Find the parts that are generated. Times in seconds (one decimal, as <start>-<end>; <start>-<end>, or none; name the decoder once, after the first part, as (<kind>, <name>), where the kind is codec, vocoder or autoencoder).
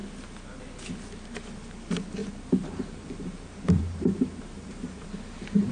2.2-5.7 (vocoder, BigVGAN v2)